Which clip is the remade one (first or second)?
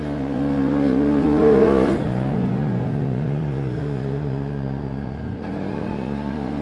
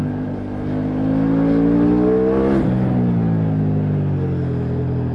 first